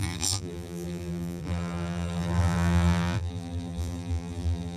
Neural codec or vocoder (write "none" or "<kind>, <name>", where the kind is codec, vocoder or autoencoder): vocoder, BigVGAN v2